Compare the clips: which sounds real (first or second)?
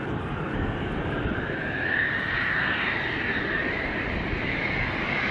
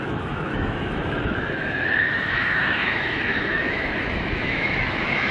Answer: first